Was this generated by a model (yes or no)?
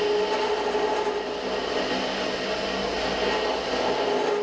no